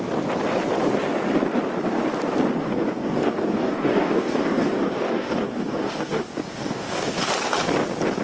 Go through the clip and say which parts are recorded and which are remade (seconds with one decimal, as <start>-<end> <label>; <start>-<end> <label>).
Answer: 0.0-2.6 recorded; 2.6-7.2 remade; 7.2-8.2 recorded